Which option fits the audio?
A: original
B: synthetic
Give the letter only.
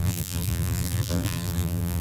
B